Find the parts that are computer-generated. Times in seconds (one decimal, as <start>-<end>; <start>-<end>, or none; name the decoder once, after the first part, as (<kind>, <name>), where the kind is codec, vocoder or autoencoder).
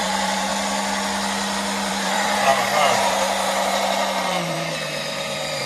0.0-0.5 (vocoder, BigVGAN v2); 1.9-5.7